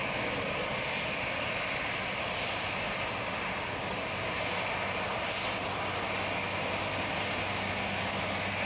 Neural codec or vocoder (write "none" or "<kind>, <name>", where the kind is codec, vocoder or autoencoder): none